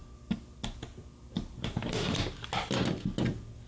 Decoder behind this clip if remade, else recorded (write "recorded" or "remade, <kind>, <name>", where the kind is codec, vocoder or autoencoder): recorded